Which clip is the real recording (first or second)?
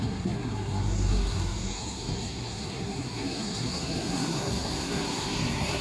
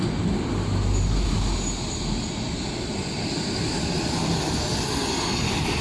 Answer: second